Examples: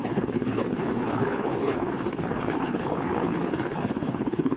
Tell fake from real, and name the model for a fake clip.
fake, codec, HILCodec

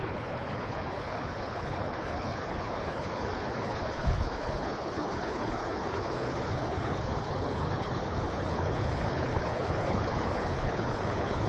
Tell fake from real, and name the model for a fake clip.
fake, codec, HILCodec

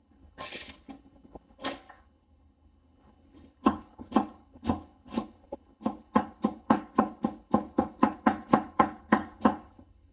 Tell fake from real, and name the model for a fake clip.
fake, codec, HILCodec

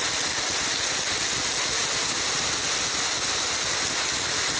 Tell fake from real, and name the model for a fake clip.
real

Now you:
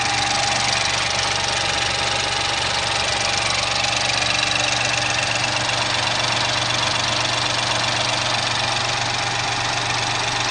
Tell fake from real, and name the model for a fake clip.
real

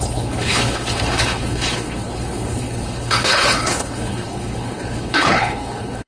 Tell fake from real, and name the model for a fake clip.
fake, codec, HILCodec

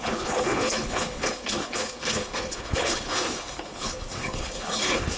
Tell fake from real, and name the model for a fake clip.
fake, codec, HILCodec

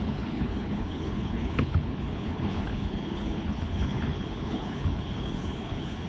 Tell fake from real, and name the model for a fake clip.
fake, codec, HILCodec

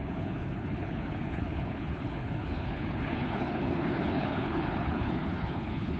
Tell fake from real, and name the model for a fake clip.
fake, codec, HILCodec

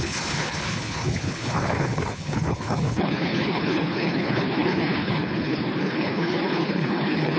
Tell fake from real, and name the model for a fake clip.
fake, codec, HILCodec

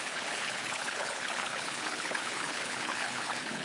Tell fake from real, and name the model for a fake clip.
fake, codec, HILCodec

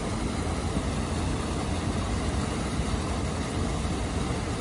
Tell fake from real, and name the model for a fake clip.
real